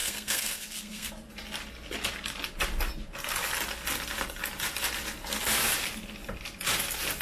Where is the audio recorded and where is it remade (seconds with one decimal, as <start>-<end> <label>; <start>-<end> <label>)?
0.0-1.1 remade; 1.1-7.2 recorded